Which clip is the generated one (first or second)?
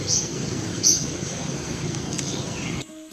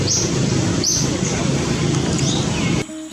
first